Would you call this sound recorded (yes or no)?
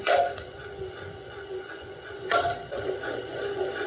no